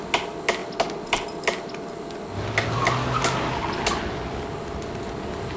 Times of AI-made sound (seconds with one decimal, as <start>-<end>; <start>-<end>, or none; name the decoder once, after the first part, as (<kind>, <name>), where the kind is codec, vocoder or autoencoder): none

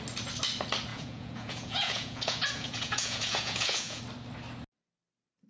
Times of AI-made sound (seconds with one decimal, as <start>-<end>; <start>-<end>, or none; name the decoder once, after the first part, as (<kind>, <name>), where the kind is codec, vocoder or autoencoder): 0.9-4.0 (vocoder, Vocos)

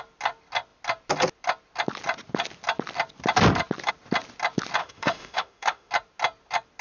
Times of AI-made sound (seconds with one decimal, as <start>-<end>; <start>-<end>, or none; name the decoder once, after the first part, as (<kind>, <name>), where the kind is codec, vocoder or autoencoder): 4.8-5.9 (autoencoder, DAC-VAE)

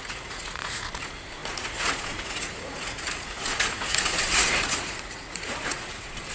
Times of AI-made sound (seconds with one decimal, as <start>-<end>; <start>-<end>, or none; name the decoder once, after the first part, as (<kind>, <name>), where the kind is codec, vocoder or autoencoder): 0.0-6.3 (vocoder, Vocos)

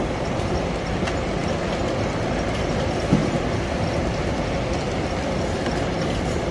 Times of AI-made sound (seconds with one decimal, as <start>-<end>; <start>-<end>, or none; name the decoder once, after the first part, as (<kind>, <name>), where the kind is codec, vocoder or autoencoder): none

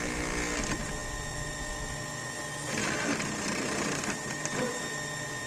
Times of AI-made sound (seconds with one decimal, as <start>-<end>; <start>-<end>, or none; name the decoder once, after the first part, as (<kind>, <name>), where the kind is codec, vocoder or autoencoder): 2.8-4.7 (vocoder, BigVGAN v2)